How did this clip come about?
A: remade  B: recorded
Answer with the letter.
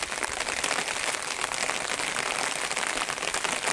B